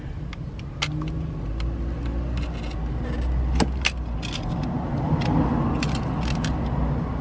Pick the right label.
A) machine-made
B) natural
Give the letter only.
B